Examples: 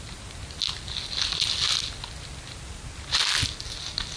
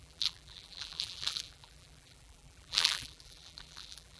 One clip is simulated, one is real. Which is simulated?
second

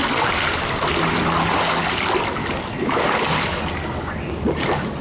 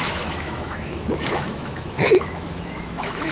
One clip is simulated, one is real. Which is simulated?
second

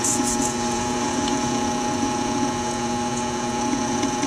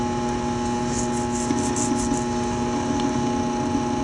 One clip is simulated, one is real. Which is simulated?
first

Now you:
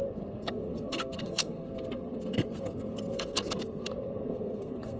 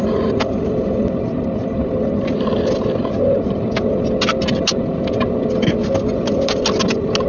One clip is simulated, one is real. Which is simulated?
first